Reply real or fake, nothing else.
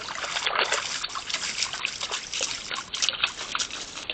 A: real